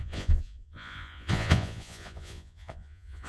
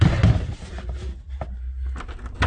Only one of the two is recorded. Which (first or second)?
second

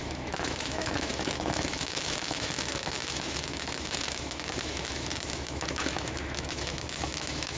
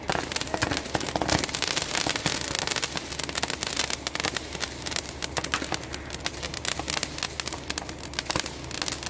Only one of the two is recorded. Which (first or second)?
second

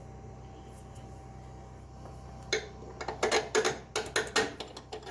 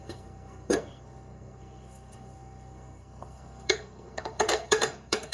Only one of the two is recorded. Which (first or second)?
first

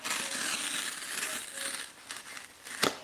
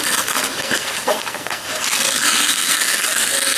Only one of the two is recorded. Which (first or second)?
first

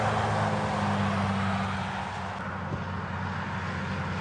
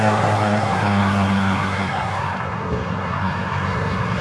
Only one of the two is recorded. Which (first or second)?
first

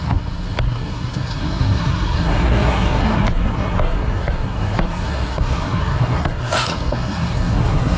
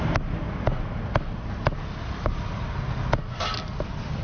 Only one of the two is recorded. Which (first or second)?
second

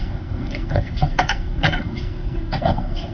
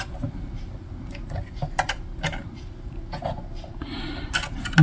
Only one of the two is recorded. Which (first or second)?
second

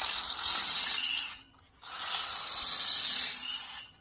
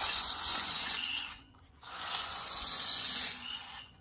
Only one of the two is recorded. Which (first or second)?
first